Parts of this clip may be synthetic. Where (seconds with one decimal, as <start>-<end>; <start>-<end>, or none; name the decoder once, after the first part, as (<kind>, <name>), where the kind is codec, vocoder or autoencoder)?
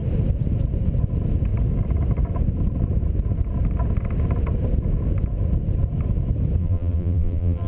6.6-7.7 (vocoder, BigVGAN v2)